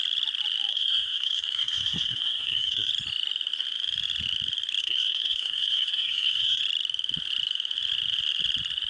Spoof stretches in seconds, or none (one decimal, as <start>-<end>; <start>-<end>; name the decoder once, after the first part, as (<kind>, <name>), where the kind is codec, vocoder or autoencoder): 0.7-2.9 (codec, SNAC); 4.8-6.6